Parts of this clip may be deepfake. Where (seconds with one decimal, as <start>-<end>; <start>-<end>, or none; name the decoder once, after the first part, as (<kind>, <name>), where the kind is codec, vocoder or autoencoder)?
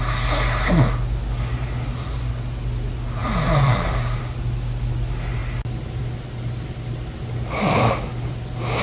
none